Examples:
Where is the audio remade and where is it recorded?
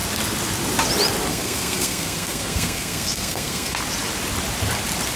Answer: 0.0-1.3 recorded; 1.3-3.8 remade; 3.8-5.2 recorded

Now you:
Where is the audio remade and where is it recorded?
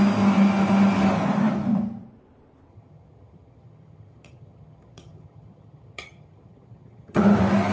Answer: 0.0-2.7 recorded; 2.7-7.2 remade; 7.2-7.7 recorded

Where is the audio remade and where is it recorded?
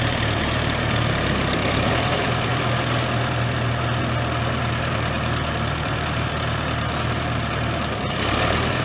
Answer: 0.0-2.5 remade; 2.5-4.8 recorded; 4.8-8.8 remade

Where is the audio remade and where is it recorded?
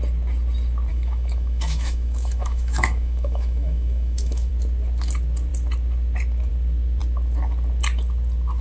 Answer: 0.0-0.9 recorded; 0.9-4.5 remade; 4.5-8.6 recorded